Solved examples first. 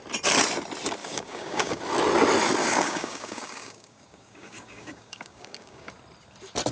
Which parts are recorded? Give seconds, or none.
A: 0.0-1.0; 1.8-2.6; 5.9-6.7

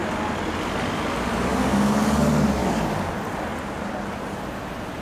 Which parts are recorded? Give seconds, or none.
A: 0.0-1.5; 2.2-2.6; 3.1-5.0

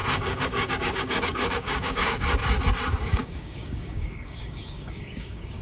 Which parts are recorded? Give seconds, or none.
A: 2.4-2.9